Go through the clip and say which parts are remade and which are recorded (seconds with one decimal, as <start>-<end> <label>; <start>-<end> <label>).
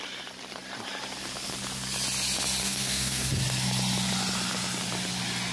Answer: 0.0-2.6 recorded; 2.6-3.3 remade; 3.3-5.5 recorded